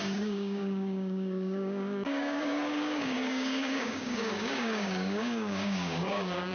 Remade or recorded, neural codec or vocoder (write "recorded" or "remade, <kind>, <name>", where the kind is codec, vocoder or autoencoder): remade, codec, DAC